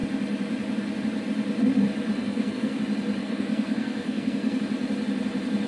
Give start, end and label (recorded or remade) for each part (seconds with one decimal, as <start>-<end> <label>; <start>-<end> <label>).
0.0-2.2 recorded; 2.2-2.8 remade; 2.8-3.2 recorded; 3.2-4.6 remade; 4.6-5.7 recorded